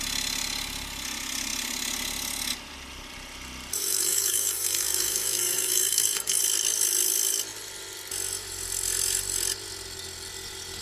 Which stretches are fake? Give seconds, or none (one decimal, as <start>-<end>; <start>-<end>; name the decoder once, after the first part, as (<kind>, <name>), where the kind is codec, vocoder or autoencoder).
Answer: 3.7-6.4 (codec, SNAC)